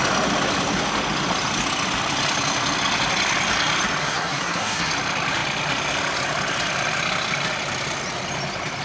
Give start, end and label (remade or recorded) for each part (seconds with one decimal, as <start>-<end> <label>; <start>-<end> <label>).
0.0-4.0 recorded; 4.0-4.9 remade; 4.9-8.8 recorded